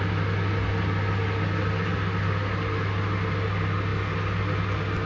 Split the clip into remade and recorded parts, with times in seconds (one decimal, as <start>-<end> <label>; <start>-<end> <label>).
0.0-5.1 recorded